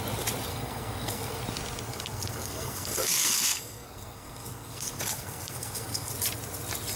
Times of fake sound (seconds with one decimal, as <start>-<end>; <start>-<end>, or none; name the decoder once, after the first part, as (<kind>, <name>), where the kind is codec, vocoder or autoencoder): 0.5-1.4 (codec, SNAC); 1.9-6.1